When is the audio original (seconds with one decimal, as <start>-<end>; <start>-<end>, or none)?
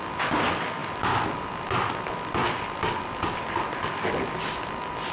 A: 0.0-5.1